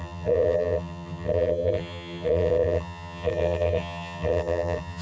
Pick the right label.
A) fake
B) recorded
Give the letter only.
A